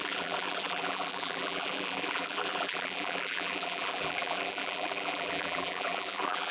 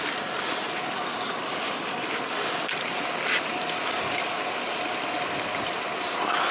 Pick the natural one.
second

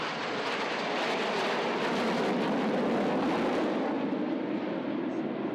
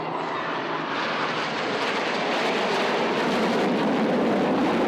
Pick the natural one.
first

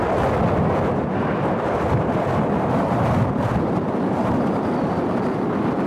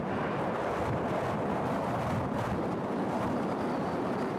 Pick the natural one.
second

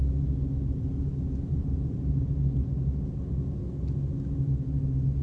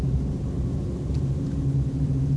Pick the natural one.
first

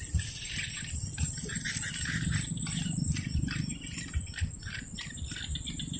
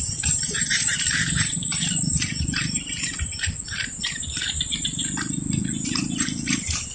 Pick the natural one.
first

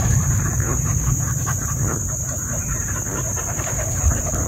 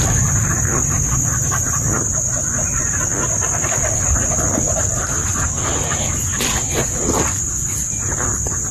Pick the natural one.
second